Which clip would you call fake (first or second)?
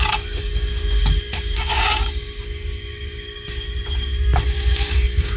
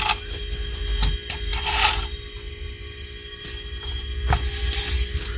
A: first